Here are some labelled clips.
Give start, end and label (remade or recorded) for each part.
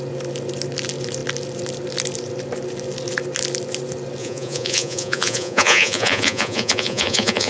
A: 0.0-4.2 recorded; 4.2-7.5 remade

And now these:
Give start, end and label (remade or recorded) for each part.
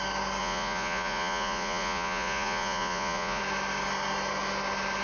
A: 0.0-0.4 recorded; 0.4-3.4 remade; 3.4-5.0 recorded